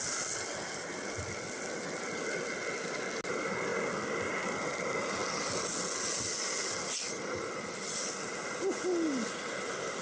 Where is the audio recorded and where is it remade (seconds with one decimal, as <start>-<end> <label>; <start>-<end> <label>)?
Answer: 0.0-10.0 recorded